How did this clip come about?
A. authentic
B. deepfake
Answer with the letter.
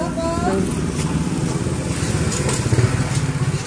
A